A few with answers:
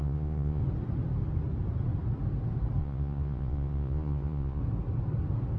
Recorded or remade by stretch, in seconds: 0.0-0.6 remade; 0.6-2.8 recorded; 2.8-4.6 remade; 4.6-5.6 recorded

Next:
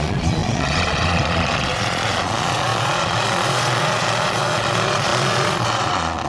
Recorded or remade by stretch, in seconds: 0.0-6.3 remade

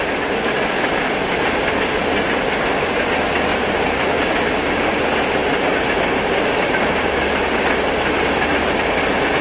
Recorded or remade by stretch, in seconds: 0.0-9.4 recorded